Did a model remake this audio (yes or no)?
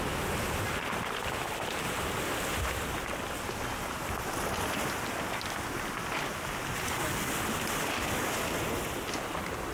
no